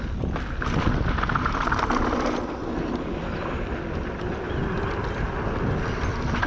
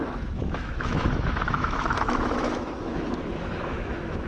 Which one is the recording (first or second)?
first